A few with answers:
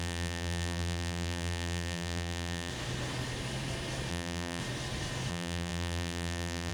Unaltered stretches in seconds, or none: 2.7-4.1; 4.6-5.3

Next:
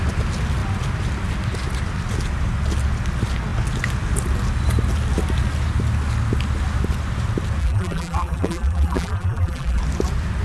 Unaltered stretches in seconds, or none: 0.0-7.6; 9.8-10.4

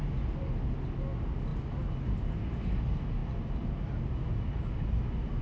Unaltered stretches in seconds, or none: 0.0-5.4

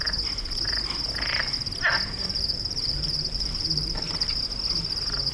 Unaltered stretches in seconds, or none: 0.0-2.2; 4.3-5.3

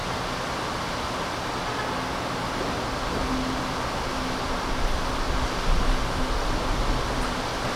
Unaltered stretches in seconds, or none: 0.0-7.8

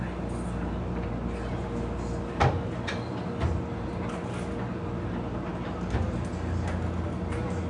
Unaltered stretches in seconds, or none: 0.0-7.7

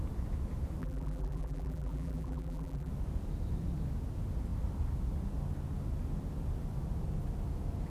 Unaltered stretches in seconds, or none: 0.0-0.8; 2.9-7.9